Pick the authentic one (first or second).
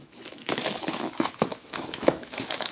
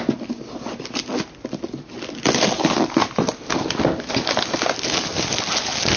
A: second